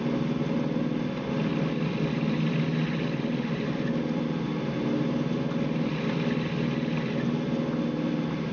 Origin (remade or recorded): recorded